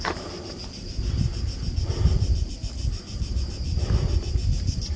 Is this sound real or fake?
real